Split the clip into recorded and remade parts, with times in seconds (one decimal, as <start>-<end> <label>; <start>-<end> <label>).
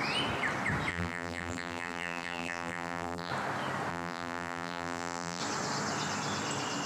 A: 0.0-0.9 recorded; 0.9-3.3 remade; 3.3-3.9 recorded; 3.9-5.4 remade; 5.4-6.9 recorded